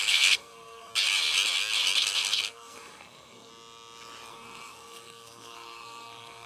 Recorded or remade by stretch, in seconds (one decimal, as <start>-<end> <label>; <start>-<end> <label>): 0.0-0.9 remade; 0.9-2.0 recorded; 2.0-3.5 remade; 3.5-4.3 recorded; 4.3-6.5 remade